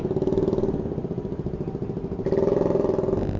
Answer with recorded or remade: recorded